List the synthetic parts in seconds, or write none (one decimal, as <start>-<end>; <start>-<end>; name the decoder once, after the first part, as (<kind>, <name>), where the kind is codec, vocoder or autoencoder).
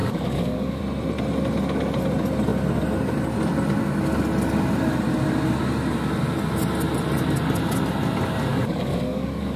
0.0-0.8 (codec, DAC); 8.5-9.6